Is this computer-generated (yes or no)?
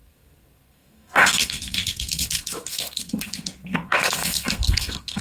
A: yes